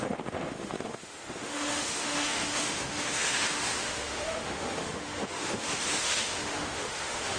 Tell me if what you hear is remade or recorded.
remade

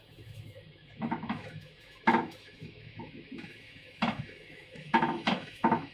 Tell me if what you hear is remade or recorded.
remade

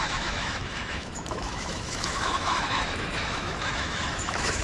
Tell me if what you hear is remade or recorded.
remade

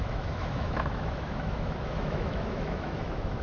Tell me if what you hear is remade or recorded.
remade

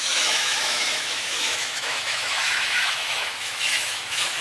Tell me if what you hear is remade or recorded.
remade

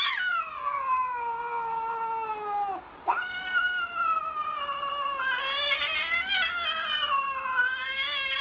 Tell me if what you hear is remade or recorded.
recorded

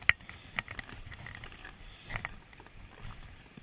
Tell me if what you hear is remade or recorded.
recorded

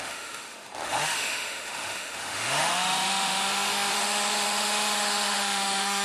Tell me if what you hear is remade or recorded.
remade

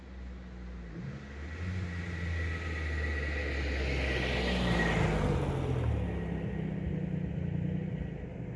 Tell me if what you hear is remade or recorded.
recorded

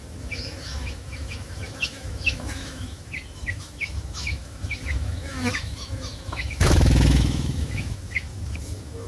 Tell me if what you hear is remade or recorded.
remade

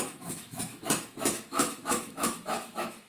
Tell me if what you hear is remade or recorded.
remade